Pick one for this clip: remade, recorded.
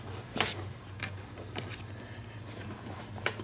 recorded